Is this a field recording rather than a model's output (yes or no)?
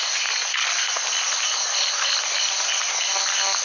yes